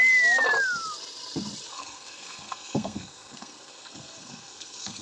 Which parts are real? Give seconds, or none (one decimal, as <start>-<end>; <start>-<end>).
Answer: 0.0-1.7